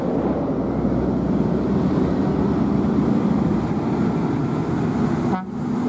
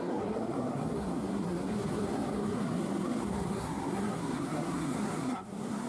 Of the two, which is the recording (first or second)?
first